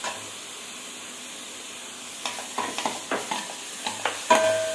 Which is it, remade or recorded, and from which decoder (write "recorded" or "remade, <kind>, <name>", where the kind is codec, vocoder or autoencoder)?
recorded